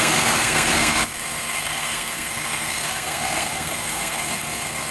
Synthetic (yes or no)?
yes